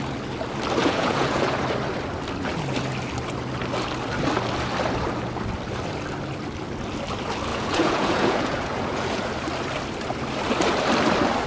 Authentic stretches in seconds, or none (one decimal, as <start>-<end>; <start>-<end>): 0.0-0.8; 1.6-7.5; 9.3-11.5